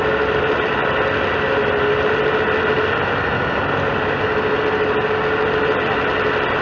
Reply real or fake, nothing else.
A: real